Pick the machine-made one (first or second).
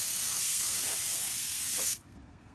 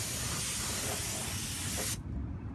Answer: first